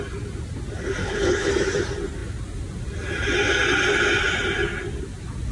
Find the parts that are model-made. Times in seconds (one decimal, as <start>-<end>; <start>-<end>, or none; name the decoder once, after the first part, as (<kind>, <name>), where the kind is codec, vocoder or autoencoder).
1.0-1.5 (codec, HILCodec)